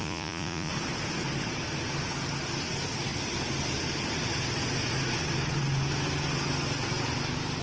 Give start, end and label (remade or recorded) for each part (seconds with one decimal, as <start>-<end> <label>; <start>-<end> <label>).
0.0-0.7 remade; 0.7-7.6 recorded